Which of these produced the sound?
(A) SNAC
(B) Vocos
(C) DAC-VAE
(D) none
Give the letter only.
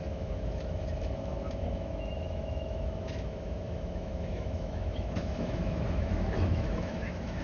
C